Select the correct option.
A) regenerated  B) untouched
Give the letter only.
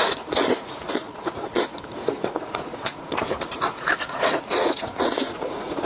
A